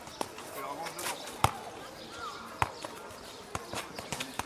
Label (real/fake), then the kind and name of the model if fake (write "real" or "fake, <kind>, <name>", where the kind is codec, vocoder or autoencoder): real